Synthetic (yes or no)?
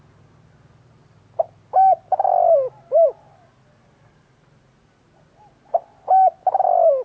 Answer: no